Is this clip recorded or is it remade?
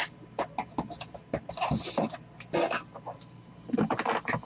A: recorded